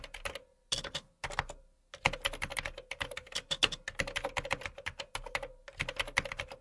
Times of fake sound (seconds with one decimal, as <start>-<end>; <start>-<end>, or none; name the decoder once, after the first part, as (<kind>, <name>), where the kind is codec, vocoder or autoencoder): none